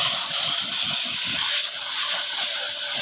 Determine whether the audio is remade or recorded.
recorded